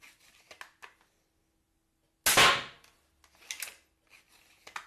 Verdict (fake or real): real